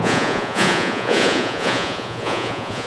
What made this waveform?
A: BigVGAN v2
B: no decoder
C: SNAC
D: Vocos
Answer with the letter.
D